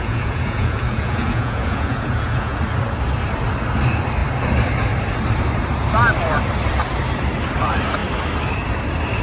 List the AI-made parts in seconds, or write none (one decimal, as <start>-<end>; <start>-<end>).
0.0-2.6